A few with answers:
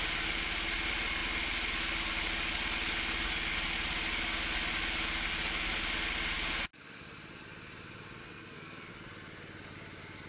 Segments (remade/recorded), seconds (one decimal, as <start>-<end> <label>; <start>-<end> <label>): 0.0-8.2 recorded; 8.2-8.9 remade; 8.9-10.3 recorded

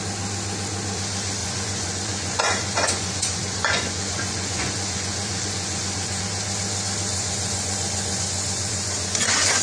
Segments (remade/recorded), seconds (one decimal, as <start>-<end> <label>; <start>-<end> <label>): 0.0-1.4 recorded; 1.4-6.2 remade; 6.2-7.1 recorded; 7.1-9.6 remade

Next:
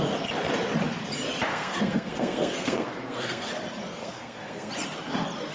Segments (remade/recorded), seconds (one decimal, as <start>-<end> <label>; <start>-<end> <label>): 0.0-1.5 recorded; 1.5-3.5 remade; 3.5-4.0 recorded; 4.0-4.7 remade; 4.7-5.5 recorded

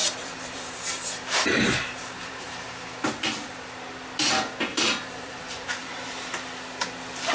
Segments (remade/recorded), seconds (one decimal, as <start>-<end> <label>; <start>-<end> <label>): 0.0-2.9 remade; 2.9-4.7 recorded; 4.7-5.9 remade; 5.9-7.3 recorded

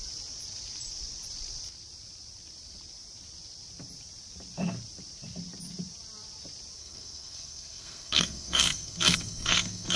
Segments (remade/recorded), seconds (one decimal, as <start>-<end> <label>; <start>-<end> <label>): 0.0-6.8 recorded; 6.8-10.0 remade

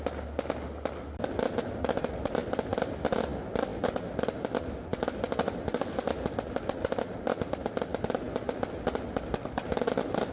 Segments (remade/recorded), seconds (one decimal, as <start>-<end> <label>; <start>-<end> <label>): 0.0-10.3 recorded